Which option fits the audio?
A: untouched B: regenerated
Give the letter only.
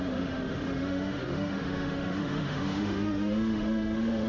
B